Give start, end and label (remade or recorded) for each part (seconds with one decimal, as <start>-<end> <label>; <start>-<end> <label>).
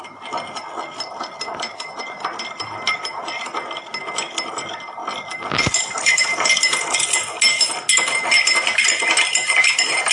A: 0.0-10.1 recorded